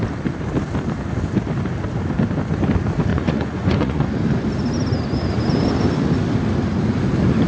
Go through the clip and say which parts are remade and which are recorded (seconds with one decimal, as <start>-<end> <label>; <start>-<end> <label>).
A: 0.0-3.1 recorded; 3.1-4.1 remade; 4.1-7.5 recorded